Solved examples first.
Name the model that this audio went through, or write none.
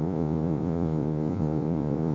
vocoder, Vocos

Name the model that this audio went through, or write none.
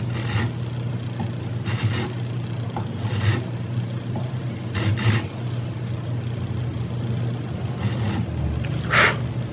none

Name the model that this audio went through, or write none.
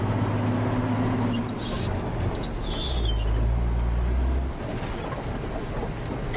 none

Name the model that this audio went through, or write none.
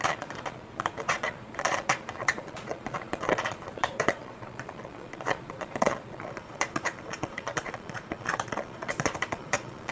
vocoder, Vocos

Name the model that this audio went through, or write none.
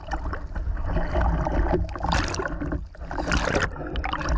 none